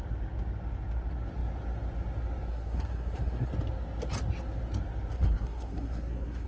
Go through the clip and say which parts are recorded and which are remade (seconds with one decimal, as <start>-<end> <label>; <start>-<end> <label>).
0.0-2.5 recorded; 2.5-3.5 remade; 3.5-5.1 recorded; 5.1-6.5 remade